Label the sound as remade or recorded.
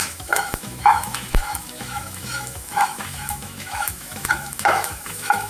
remade